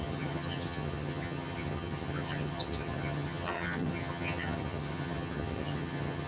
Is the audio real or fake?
fake